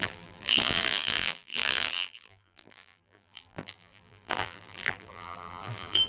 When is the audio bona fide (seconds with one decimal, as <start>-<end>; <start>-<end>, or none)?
none